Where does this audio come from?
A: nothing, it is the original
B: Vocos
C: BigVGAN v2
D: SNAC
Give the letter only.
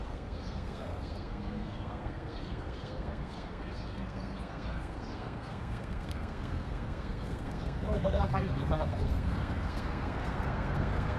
D